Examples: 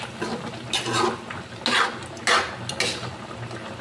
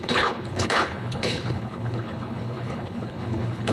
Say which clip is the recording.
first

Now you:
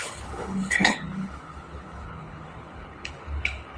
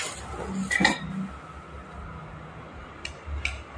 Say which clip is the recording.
second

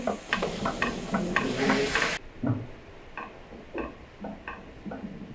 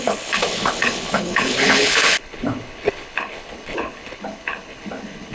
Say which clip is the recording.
first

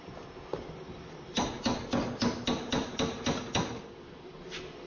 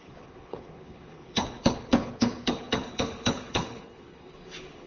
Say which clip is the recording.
first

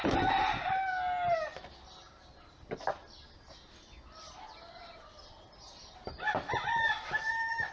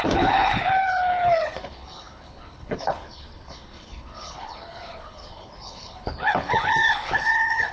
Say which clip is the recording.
first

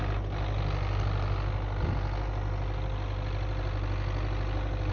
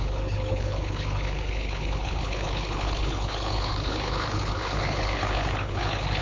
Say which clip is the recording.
first